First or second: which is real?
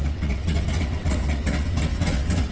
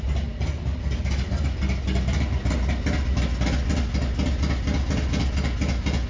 second